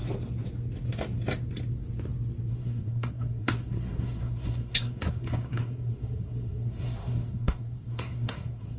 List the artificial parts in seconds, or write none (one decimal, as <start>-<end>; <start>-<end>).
2.5-8.8